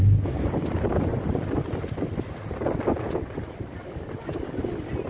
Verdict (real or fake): real